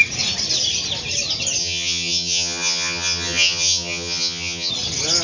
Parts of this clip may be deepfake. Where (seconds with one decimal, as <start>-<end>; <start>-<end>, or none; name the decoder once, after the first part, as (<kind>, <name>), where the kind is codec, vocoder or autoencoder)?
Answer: 1.6-4.7 (vocoder, HiFi-GAN)